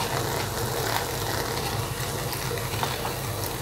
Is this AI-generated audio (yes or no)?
no